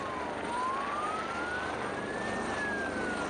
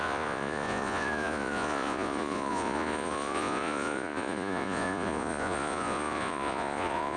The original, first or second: first